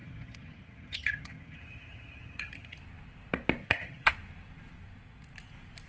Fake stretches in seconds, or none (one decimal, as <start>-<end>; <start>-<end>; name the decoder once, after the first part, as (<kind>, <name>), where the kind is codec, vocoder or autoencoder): 0.0-2.8 (vocoder, HiFi-GAN); 3.6-4.1